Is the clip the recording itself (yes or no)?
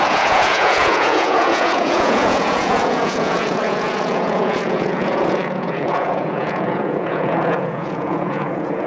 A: no